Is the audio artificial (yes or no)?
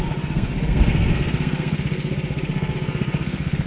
yes